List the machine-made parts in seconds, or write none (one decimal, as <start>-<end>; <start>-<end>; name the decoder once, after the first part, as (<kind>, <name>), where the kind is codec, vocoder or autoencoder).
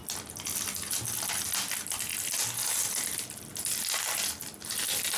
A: none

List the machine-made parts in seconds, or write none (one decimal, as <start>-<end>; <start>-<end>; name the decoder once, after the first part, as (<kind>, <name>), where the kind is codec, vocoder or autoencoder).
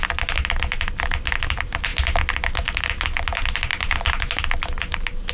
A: none